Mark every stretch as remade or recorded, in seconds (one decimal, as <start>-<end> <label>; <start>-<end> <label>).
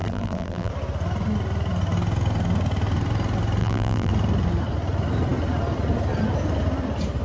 0.0-0.7 remade; 0.7-3.6 recorded; 3.6-4.1 remade; 4.1-7.2 recorded